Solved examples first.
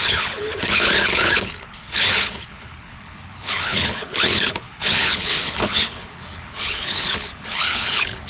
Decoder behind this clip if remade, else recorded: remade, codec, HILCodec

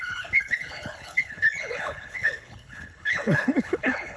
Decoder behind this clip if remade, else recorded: remade, codec, HILCodec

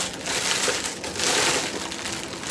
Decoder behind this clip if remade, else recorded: recorded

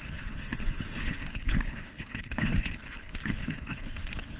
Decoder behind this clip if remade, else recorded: remade, codec, HILCodec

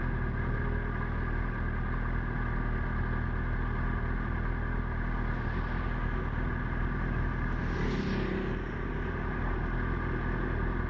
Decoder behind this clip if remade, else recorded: recorded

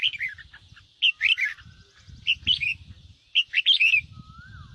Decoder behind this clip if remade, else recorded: recorded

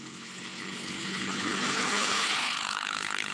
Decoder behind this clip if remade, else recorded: remade, codec, HILCodec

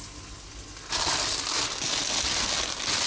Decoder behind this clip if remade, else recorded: recorded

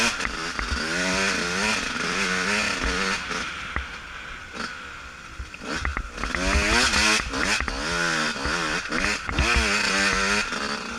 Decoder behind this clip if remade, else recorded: recorded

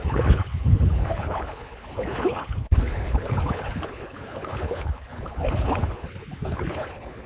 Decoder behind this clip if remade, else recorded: remade, codec, HILCodec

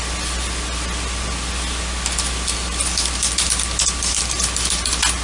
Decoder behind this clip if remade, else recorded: recorded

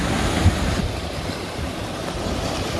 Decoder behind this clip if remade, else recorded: recorded